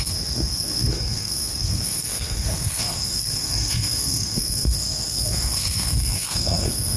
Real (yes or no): no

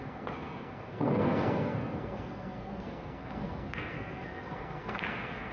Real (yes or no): no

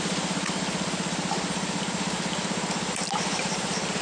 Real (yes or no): yes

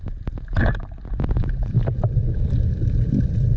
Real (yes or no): yes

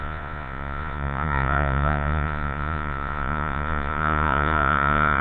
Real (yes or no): no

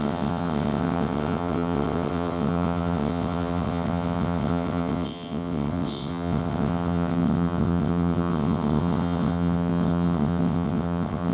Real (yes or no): no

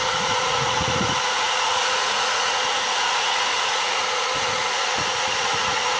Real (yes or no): no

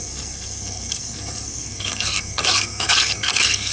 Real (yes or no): no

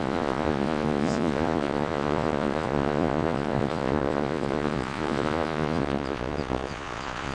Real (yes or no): no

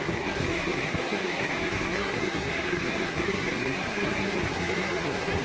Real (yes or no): no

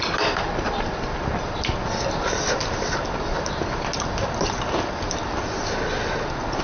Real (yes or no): yes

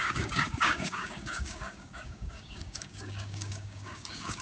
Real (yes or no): no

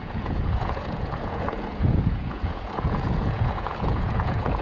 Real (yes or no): no